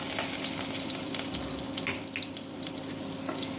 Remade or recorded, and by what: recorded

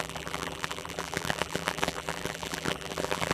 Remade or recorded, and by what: remade, vocoder, BigVGAN v2